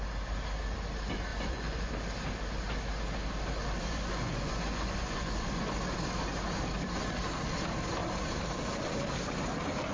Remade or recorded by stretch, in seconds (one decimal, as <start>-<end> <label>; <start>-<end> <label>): 0.0-1.3 recorded; 1.3-1.9 remade; 1.9-3.8 recorded; 3.8-5.6 remade; 5.6-9.9 recorded